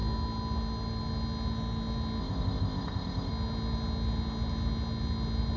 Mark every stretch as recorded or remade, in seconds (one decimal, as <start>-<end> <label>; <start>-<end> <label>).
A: 0.0-2.2 recorded; 2.2-3.3 remade; 3.3-5.6 recorded